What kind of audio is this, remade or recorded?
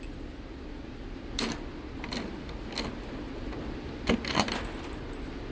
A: recorded